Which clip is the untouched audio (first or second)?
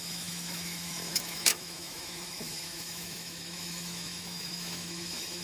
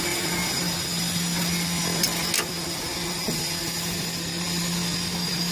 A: second